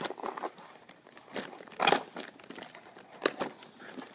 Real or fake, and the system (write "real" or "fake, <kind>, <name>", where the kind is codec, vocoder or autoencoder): real